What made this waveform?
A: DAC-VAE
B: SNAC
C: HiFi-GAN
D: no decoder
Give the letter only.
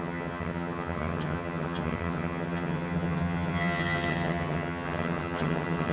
C